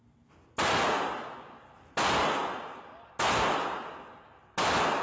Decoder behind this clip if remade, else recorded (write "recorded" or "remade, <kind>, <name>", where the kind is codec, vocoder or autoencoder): recorded